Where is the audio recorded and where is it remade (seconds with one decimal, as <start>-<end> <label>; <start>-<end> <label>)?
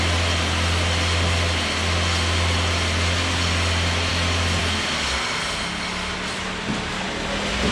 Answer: 0.0-7.7 recorded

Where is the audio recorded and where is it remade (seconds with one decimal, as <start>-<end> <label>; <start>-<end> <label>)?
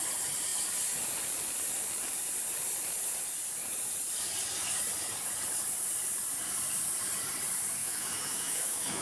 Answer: 0.0-7.8 recorded; 7.8-9.0 remade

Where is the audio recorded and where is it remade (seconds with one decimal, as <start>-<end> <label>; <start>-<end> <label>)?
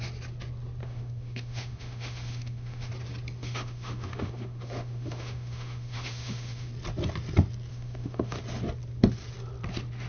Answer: 0.0-0.8 recorded; 0.8-2.9 remade; 2.9-3.4 recorded; 3.4-6.7 remade; 6.7-7.7 recorded; 7.7-8.4 remade; 8.4-10.1 recorded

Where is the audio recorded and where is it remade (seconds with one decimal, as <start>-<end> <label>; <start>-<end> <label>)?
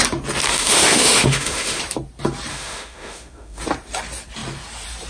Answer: 0.0-0.5 recorded; 0.5-1.8 remade; 1.8-2.5 recorded; 2.5-3.6 remade; 3.6-5.1 recorded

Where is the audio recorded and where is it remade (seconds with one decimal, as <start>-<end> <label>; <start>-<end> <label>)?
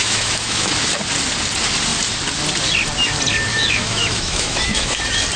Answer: 0.0-0.7 remade; 0.7-3.5 recorded; 3.5-5.0 remade; 5.0-5.4 recorded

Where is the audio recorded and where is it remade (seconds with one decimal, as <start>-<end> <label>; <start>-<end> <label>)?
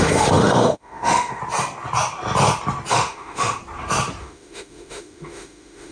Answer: 0.0-1.4 remade; 1.4-2.9 recorded; 2.9-3.6 remade; 3.6-4.2 recorded; 4.2-5.9 remade